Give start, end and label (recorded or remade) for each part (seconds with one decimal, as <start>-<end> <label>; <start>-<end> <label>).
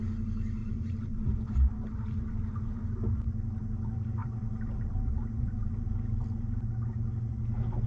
0.0-0.6 recorded; 0.6-1.9 remade; 1.9-4.2 recorded; 4.2-5.7 remade; 5.7-7.9 recorded